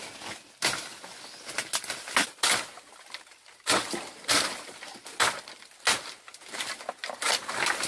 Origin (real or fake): real